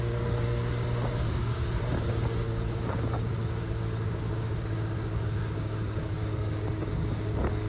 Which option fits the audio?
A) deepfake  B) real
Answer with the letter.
A